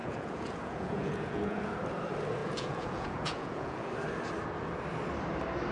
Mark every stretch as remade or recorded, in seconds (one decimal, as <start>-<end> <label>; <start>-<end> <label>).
0.0-1.6 remade; 1.6-2.4 recorded; 2.4-3.9 remade; 3.9-5.7 recorded